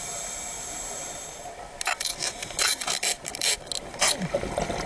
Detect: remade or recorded recorded